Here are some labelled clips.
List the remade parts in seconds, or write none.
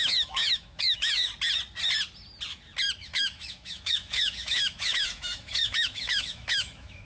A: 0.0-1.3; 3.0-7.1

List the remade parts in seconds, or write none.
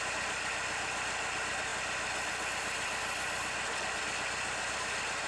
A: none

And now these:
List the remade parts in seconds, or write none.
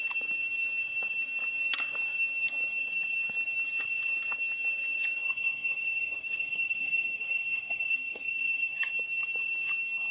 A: 5.2-8.9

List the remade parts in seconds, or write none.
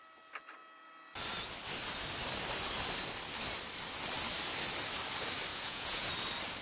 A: 5.5-6.1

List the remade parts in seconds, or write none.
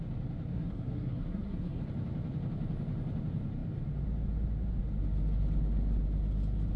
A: 0.5-1.8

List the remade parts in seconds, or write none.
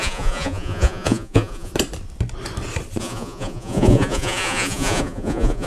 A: 0.0-1.7; 3.0-5.7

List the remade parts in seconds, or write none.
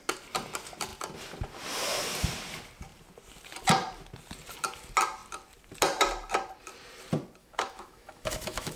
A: 7.4-8.8